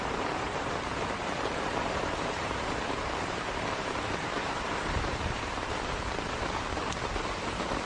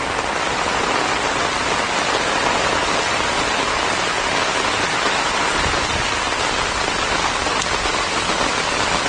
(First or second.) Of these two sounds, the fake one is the first